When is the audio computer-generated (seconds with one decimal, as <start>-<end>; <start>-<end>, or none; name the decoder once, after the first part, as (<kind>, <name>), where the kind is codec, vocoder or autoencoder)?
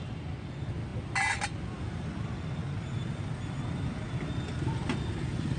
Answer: none